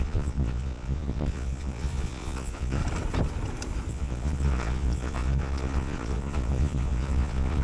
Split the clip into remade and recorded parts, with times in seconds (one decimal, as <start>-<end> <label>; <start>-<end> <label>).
0.0-2.8 remade; 2.8-3.9 recorded; 3.9-7.6 remade